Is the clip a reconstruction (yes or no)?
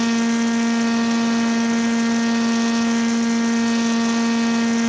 no